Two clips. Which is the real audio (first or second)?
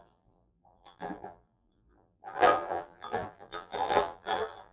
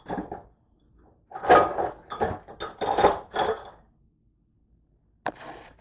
second